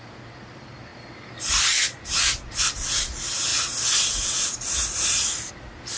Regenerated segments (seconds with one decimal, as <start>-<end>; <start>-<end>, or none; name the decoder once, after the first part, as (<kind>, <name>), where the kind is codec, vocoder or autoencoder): none